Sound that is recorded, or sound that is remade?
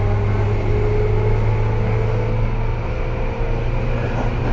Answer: recorded